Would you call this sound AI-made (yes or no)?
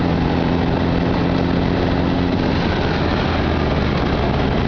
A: no